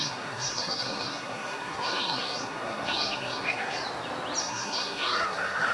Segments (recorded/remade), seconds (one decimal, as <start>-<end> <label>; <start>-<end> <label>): 0.0-3.8 remade; 3.8-4.4 recorded; 4.4-5.7 remade